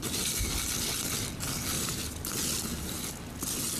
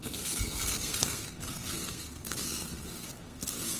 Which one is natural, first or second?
first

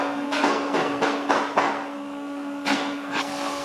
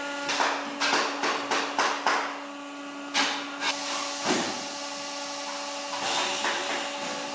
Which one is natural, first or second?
second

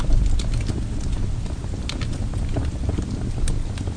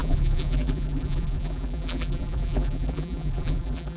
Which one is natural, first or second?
first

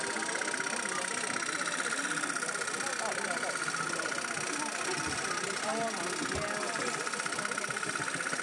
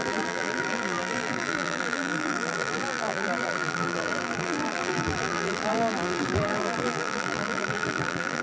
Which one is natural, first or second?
first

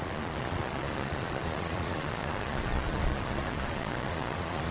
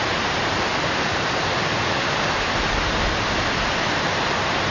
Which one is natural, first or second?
second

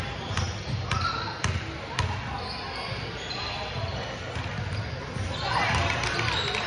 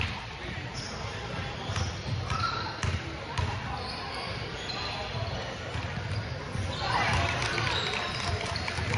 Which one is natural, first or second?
first